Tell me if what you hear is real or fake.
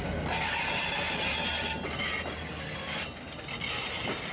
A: real